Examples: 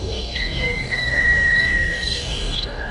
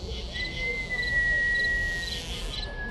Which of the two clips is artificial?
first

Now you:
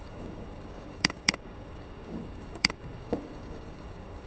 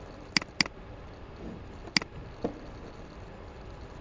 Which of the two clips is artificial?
first